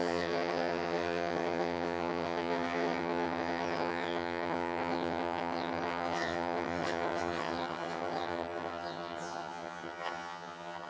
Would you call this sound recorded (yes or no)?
no